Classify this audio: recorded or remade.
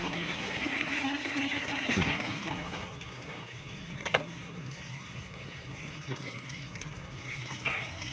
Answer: remade